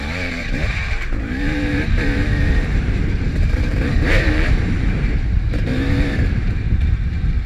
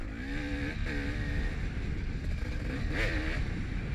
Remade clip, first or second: first